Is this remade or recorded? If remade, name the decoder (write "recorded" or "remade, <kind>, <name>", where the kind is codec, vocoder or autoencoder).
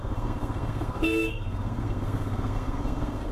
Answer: remade, codec, SNAC